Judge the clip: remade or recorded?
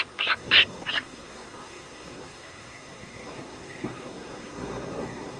remade